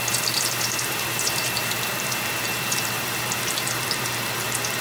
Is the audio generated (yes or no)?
yes